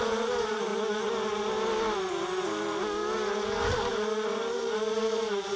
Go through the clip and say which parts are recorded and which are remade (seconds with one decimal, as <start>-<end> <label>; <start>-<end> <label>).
0.0-0.7 remade; 0.7-3.9 recorded; 3.9-5.6 remade